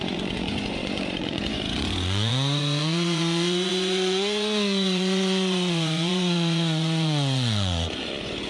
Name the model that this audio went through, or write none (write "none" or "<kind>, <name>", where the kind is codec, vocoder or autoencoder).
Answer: vocoder, Vocos